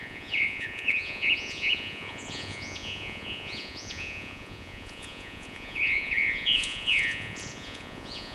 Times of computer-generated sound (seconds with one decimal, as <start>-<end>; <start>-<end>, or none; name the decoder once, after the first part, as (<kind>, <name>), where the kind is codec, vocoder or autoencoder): 0.0-8.3 (vocoder, Vocos)

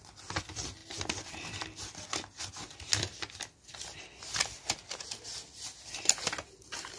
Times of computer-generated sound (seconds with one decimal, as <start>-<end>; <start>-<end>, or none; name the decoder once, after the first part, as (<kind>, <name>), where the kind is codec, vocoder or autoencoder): none

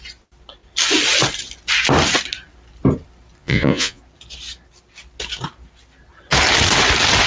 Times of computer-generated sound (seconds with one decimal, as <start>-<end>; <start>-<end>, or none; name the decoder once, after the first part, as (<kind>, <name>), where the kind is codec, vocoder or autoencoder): 3.4-4.0 (vocoder, Vocos)

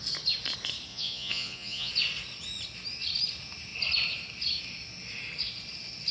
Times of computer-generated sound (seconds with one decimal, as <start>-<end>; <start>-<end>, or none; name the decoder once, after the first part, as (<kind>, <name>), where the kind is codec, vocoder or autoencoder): 0.9-1.9 (vocoder, Vocos)

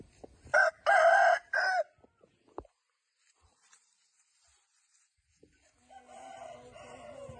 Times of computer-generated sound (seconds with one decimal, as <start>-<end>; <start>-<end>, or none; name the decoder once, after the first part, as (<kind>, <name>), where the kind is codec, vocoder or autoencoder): none